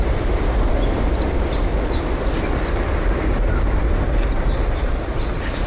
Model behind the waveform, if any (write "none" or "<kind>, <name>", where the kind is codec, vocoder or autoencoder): none